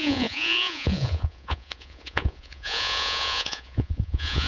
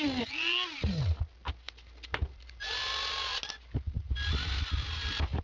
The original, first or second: second